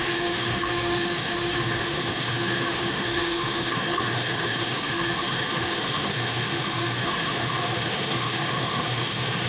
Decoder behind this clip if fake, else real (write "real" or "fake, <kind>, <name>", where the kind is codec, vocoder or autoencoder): fake, autoencoder, DAC-VAE